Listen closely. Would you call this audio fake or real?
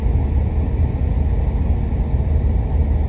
real